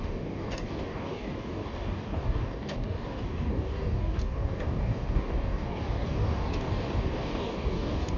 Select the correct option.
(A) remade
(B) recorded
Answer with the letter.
A